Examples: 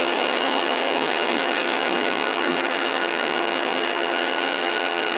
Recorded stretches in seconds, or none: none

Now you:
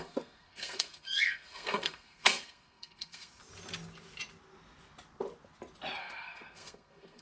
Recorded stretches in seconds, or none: 3.4-6.0